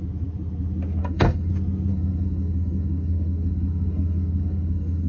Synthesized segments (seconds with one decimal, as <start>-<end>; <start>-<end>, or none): 1.0-1.5; 1.9-5.1